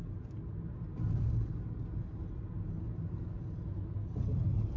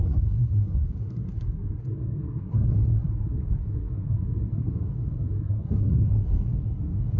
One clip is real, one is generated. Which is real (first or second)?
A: first